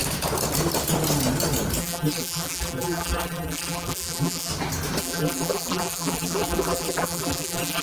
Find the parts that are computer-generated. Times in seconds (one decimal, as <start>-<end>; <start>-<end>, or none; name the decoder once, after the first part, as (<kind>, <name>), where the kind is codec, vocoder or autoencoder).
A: 1.8-4.5 (vocoder, BigVGAN v2); 5.0-7.8